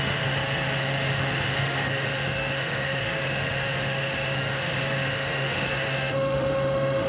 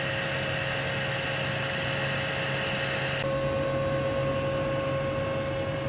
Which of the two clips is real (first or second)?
second